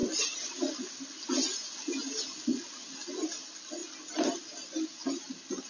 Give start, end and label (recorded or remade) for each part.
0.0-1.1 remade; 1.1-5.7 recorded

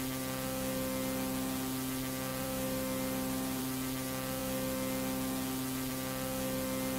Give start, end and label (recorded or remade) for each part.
0.0-2.3 recorded; 2.3-3.6 remade; 3.6-7.0 recorded

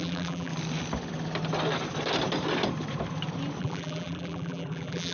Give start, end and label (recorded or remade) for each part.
0.0-0.5 remade; 0.5-3.6 recorded; 3.6-5.1 remade

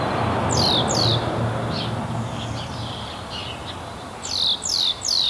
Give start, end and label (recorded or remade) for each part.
0.0-5.3 recorded

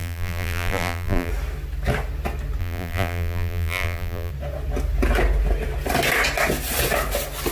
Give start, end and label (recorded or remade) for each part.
0.0-1.3 remade; 1.3-2.6 recorded; 2.6-4.3 remade; 4.3-7.5 recorded

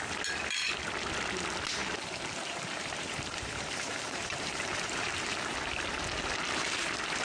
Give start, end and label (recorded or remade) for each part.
0.0-1.8 recorded; 1.8-5.4 remade; 5.4-7.2 recorded